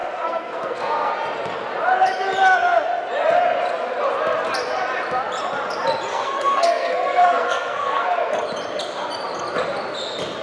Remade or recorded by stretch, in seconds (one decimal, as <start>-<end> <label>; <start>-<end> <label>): 0.0-1.1 remade; 1.1-6.1 recorded; 6.1-8.4 remade; 8.4-10.4 recorded